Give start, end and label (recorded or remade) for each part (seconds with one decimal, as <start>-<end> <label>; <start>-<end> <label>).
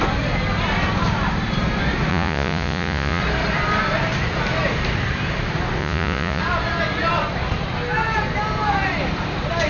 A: 0.0-2.1 recorded; 2.1-3.2 remade; 3.2-5.8 recorded; 5.8-6.4 remade; 6.4-9.7 recorded